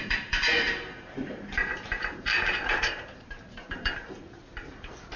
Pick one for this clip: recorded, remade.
remade